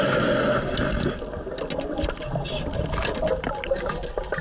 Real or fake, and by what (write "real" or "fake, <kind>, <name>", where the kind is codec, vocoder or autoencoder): real